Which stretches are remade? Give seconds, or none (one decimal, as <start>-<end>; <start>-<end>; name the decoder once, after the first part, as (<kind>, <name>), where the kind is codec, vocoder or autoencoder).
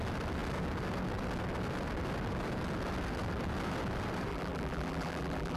4.3-5.6 (vocoder, BigVGAN v2)